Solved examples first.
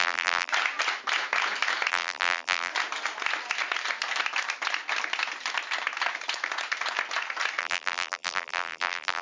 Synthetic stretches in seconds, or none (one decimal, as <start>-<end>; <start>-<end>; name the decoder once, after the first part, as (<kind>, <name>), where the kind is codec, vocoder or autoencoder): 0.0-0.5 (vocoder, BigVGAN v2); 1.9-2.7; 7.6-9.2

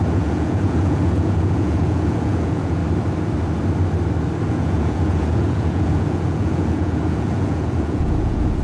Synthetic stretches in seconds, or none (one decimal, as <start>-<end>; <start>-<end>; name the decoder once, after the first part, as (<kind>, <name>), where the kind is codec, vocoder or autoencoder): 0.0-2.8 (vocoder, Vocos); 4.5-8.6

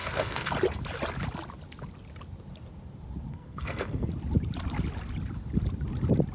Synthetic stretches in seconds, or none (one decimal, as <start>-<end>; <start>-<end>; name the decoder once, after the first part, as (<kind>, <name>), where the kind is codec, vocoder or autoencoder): 0.0-0.5 (codec, SNAC); 3.3-4.1

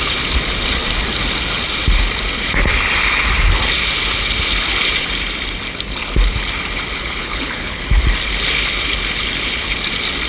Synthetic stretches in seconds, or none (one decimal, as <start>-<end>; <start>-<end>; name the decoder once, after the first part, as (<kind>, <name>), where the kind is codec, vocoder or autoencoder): 7.2-7.8 (codec, HILCodec)

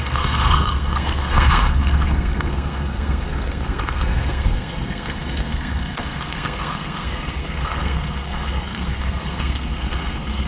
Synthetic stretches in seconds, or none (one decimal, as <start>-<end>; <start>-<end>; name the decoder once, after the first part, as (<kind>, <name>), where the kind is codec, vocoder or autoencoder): 0.0-10.5 (codec, SNAC)

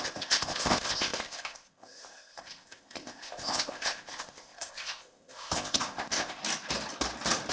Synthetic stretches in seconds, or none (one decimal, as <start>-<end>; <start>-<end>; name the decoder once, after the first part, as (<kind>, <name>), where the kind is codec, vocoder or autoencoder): 0.0-6.4 (codec, ZipCodec)

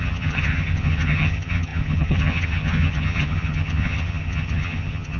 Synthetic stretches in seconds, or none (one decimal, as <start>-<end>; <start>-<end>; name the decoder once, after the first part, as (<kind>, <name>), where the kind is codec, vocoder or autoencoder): 0.0-5.2 (vocoder, HiFi-GAN)